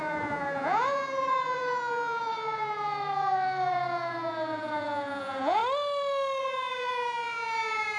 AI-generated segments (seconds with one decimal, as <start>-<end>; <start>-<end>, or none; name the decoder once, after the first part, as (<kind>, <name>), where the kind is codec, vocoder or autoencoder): 0.0-5.6 (vocoder, Vocos); 6.4-8.0